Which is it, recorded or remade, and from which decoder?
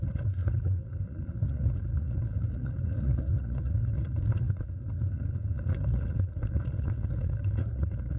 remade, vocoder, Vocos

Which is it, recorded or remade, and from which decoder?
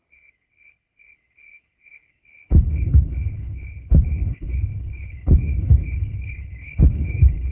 remade, codec, HILCodec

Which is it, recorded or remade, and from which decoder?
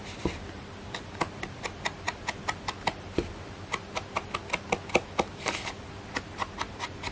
recorded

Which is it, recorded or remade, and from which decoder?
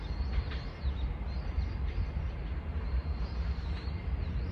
recorded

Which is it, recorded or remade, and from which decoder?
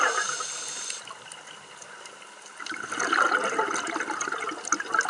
recorded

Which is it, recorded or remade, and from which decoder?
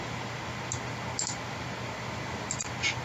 recorded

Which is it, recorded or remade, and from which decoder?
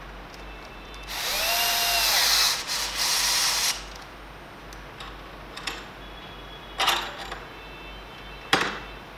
recorded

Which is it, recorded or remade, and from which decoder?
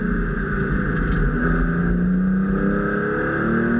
recorded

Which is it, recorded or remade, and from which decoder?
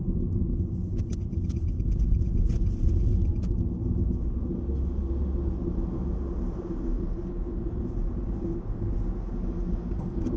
recorded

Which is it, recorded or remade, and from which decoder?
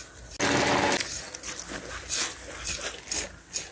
recorded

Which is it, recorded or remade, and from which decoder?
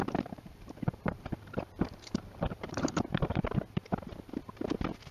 remade, vocoder, BigVGAN v2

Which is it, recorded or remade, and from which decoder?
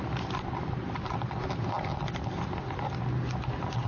recorded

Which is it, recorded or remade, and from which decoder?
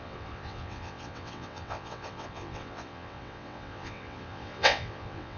remade, vocoder, WaveNeXt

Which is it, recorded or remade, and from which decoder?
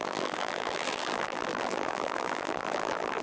remade, vocoder, BigVGAN v2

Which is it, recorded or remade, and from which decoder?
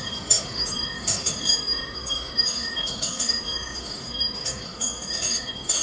remade, autoencoder, DAC-VAE